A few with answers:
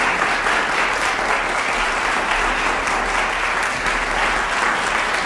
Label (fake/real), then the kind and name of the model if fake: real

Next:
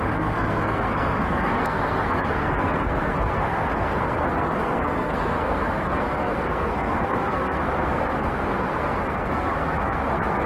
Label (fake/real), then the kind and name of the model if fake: fake, codec, SNAC